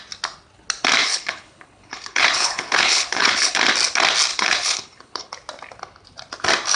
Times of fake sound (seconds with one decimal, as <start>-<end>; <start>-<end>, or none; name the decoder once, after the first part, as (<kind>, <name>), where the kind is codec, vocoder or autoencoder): 1.0-3.6 (codec, HILCodec); 4.3-5.3